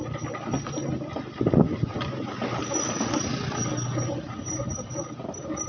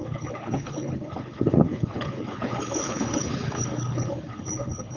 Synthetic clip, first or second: second